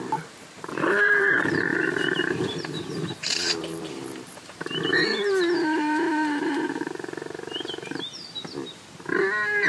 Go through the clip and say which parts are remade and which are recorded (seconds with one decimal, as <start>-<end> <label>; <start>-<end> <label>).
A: 0.0-9.7 remade